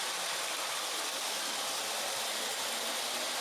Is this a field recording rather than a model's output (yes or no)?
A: yes